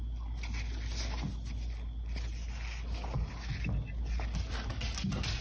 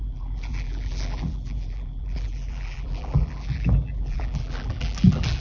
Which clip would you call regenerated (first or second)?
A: second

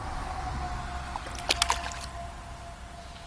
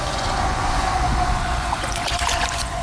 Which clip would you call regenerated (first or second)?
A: second